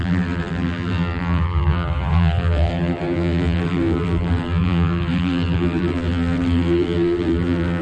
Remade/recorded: remade